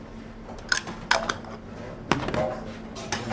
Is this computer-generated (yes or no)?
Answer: no